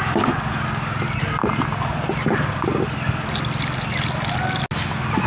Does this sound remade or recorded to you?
recorded